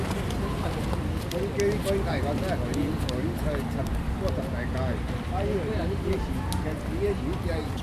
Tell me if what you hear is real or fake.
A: real